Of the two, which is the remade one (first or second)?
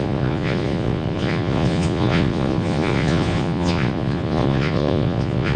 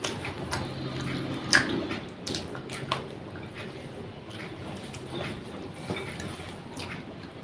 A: first